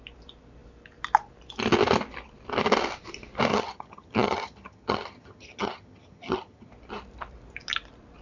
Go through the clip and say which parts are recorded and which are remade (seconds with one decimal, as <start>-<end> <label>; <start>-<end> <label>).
0.0-3.5 recorded; 3.5-6.7 remade; 6.7-8.2 recorded